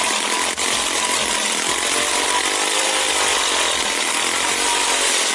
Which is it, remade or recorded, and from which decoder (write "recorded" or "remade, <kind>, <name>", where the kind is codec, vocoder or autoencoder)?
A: recorded